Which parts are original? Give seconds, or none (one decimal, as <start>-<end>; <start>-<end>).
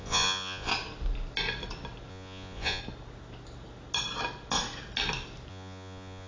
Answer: 0.7-2.1; 2.8-5.5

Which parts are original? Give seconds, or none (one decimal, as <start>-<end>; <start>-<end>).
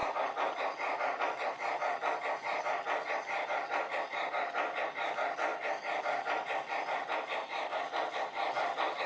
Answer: 0.0-9.1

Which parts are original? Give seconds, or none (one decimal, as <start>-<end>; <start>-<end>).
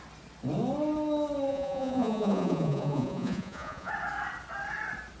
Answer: 0.0-1.5; 3.9-5.2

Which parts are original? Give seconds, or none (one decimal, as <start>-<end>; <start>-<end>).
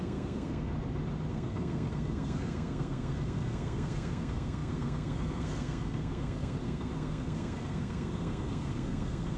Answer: 0.7-1.3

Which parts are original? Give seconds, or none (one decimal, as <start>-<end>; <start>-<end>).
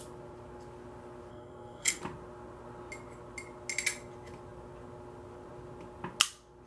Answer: 0.0-1.3; 2.0-6.7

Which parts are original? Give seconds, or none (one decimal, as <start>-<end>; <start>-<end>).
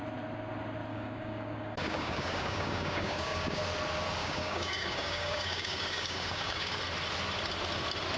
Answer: 0.0-0.9; 3.6-4.2; 6.8-8.2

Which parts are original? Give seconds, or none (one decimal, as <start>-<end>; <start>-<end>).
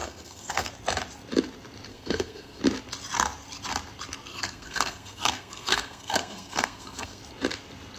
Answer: 0.7-1.9; 2.6-4.3; 7.2-8.0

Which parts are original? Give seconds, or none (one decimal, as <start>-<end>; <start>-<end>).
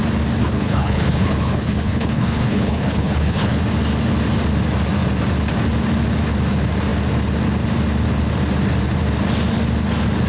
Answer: 0.0-0.4; 3.6-10.3